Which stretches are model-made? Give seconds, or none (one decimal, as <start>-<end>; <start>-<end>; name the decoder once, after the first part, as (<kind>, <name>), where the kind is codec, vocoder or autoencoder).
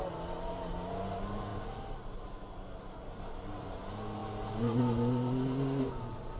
none